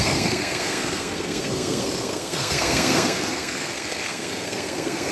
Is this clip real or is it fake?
fake